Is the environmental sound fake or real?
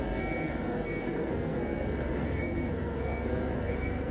fake